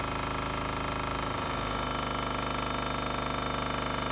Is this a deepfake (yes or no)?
no